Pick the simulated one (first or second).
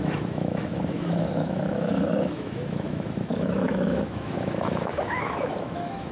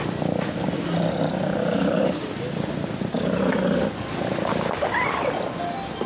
first